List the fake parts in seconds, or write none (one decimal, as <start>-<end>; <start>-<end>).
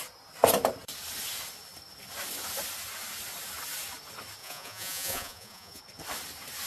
4.4-5.8